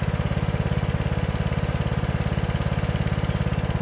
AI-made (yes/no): no